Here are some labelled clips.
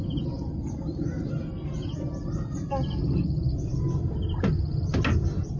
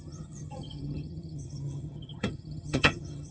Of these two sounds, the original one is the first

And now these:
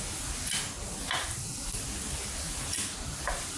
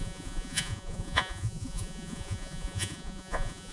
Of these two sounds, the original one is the first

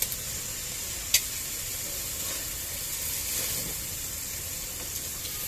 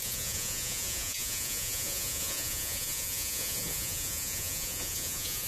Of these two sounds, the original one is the first